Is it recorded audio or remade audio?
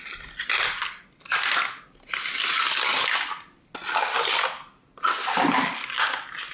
recorded